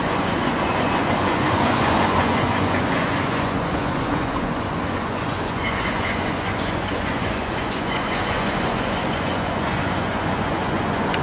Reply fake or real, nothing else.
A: fake